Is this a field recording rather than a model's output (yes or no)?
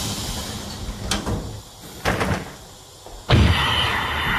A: yes